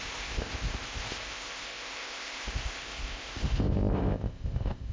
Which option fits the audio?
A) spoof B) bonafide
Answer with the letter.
A